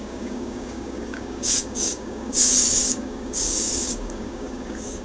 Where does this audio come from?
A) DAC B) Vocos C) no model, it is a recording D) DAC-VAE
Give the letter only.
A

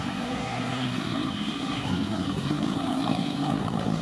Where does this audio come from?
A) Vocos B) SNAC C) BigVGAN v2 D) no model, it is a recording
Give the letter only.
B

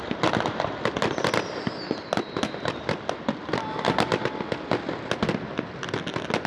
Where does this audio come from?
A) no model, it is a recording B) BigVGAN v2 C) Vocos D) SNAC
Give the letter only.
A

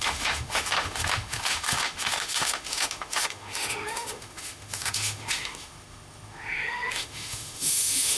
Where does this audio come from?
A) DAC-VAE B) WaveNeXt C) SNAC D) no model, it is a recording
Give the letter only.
A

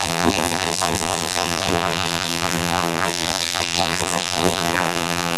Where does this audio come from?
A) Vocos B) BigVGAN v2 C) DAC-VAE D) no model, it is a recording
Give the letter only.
B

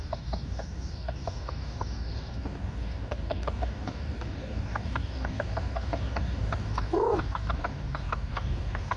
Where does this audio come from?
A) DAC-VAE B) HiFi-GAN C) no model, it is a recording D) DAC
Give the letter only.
D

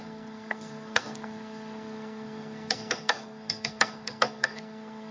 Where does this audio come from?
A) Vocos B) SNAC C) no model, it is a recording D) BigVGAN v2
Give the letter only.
B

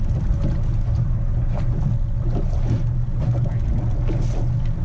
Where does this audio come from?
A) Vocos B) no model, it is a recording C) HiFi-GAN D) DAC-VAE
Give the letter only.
B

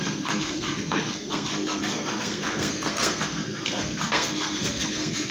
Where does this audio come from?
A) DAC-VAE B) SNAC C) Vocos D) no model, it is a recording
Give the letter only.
B